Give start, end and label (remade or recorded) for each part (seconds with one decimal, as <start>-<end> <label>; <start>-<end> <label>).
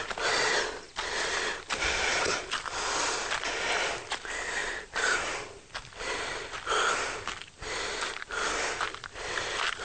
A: 0.0-4.6 recorded; 4.6-5.2 remade; 5.2-9.8 recorded